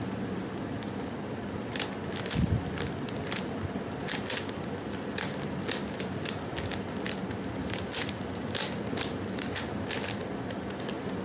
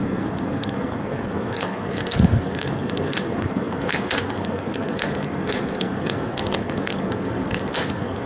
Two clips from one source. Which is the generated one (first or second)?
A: second